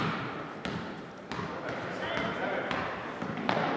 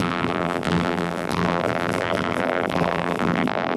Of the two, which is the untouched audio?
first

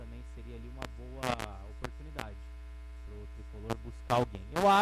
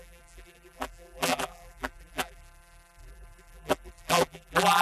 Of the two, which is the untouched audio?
first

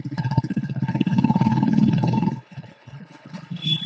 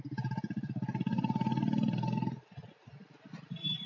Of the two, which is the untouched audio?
second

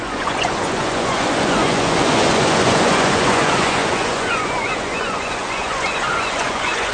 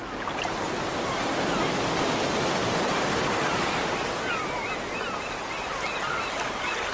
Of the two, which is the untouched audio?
second